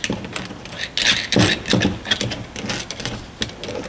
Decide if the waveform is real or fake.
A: real